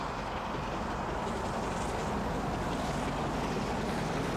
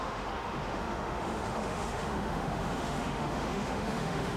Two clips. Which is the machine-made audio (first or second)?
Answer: second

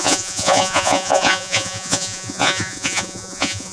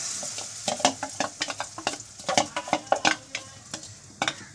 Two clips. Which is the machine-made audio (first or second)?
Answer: first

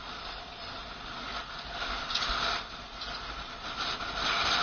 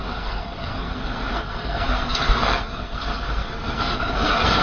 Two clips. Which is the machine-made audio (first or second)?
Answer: second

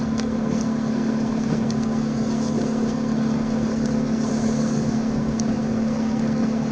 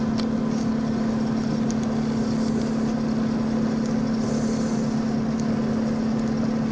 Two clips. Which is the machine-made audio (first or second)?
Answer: first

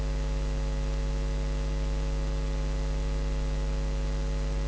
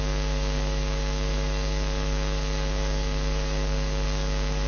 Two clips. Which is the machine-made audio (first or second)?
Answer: second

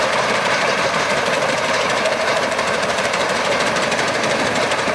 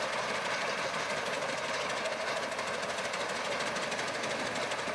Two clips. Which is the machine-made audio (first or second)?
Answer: first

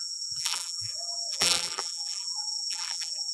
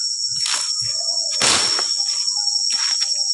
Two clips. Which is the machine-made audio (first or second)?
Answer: first